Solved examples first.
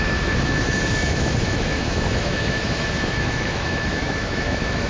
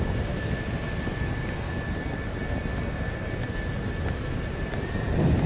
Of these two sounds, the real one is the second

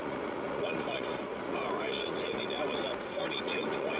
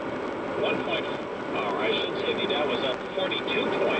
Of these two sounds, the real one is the second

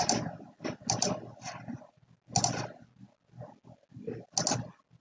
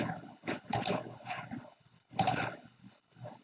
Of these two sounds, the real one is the first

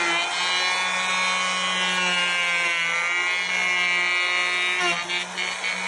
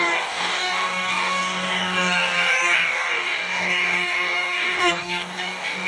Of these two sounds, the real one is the first